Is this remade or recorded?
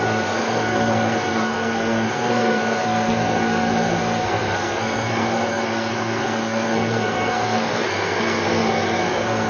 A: remade